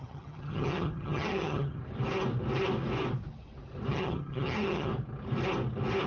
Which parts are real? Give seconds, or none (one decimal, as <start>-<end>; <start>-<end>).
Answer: 1.8-3.9; 4.9-6.1